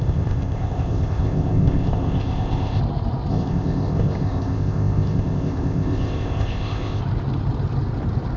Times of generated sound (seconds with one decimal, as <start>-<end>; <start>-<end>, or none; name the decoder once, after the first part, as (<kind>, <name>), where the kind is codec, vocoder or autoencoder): 0.0-2.8 (codec, ZipCodec); 3.3-7.0